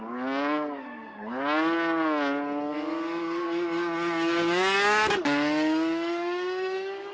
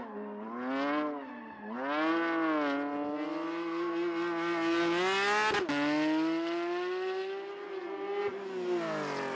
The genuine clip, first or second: second